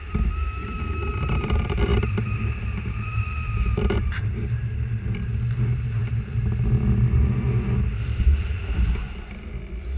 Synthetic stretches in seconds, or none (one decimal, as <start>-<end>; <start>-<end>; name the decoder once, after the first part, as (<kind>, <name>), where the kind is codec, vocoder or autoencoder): 1.1-4.4 (vocoder, BigVGAN v2)